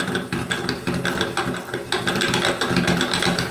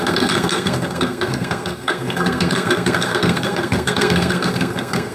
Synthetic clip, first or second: second